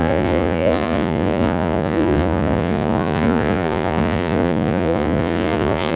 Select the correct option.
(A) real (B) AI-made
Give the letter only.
B